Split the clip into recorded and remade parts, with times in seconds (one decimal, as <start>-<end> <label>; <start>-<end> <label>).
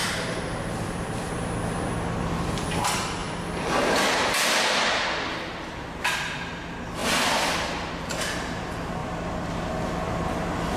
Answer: 0.0-1.3 remade; 1.3-3.2 recorded; 3.2-5.5 remade; 5.5-9.0 recorded; 9.0-9.7 remade; 9.7-10.8 recorded